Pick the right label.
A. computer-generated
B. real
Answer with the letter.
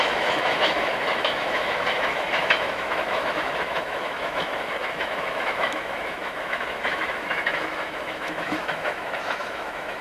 A